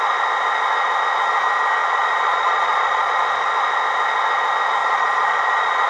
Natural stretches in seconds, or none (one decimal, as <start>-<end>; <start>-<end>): 0.0-1.8; 3.1-4.8